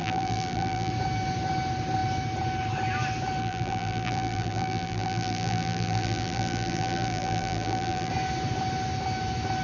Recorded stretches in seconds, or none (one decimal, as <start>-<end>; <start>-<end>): 0.9-3.4; 8.1-9.6